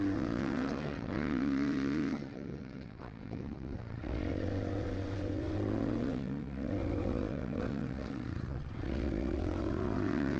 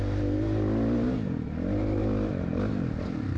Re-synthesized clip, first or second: first